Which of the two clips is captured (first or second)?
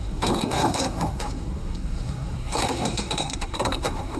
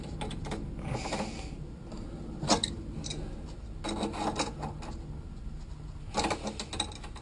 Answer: second